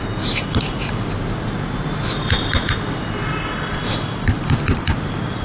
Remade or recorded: recorded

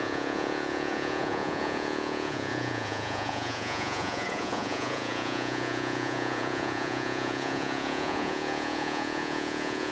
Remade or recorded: remade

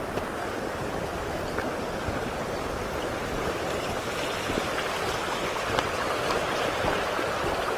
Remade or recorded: recorded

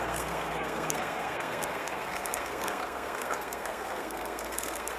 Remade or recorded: remade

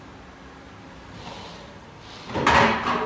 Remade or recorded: recorded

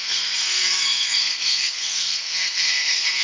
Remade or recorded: remade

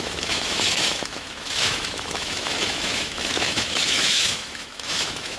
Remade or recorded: remade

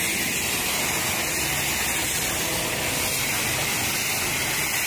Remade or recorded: recorded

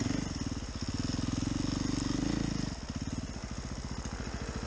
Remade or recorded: recorded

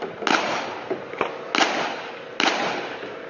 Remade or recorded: recorded